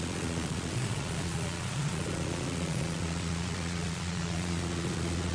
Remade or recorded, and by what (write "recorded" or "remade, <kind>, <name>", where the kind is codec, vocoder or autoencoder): remade, vocoder, Vocos